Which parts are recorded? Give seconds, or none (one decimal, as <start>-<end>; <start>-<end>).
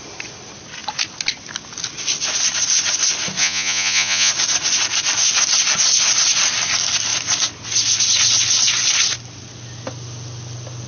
0.0-3.4; 4.3-10.9